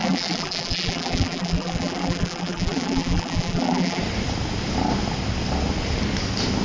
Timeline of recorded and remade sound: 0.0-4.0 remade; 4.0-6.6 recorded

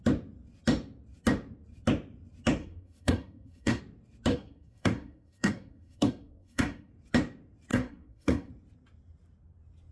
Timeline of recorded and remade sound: 0.0-2.6 recorded; 2.6-3.8 remade; 3.8-4.3 recorded; 4.3-6.9 remade; 6.9-7.7 recorded; 7.7-8.5 remade; 8.5-9.9 recorded

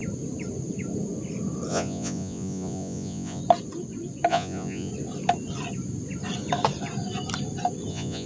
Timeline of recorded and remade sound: 0.0-1.7 recorded; 1.7-3.4 remade; 3.4-4.3 recorded; 4.3-4.9 remade; 4.9-7.9 recorded; 7.9-8.3 remade

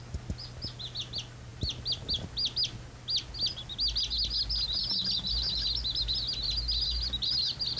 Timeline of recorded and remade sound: 0.0-7.8 recorded

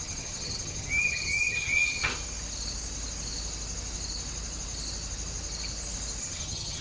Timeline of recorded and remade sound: 0.0-2.1 remade; 2.1-6.2 recorded; 6.2-6.8 remade

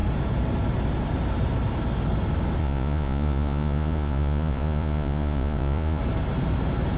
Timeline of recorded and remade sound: 0.0-2.6 recorded; 2.6-6.0 remade; 6.0-7.0 recorded

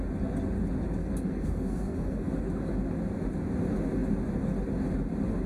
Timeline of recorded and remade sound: 0.0-1.0 recorded; 1.0-2.3 remade; 2.3-5.5 recorded